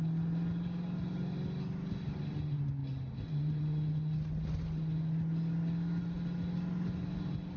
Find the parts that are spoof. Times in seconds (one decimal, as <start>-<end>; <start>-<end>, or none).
none